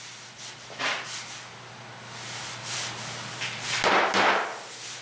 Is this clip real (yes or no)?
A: yes